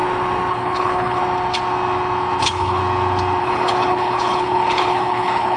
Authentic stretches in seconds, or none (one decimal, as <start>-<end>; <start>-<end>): 0.0-0.5; 1.2-2.4; 2.8-3.4